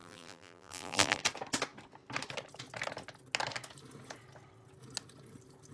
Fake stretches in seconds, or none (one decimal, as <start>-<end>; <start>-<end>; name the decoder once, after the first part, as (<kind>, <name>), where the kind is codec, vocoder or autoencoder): 0.0-1.2 (vocoder, BigVGAN v2)